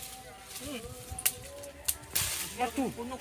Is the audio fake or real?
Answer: real